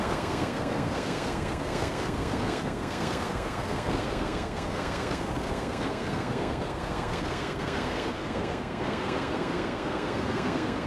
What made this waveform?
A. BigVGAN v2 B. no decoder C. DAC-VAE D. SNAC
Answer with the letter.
D